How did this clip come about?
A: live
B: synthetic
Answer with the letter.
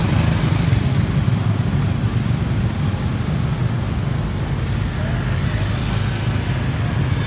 A